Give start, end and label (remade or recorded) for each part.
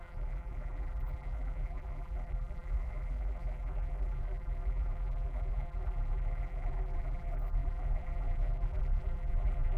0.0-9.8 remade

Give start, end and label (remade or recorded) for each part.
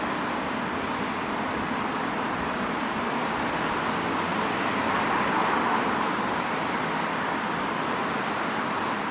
0.0-9.1 remade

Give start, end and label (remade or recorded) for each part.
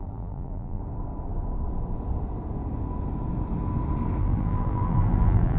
0.0-0.8 remade; 0.8-4.2 recorded; 4.2-5.6 remade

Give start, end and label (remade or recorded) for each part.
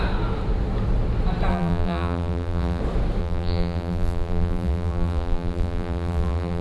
0.0-1.5 recorded; 1.5-2.8 remade; 2.8-3.2 recorded; 3.2-6.6 remade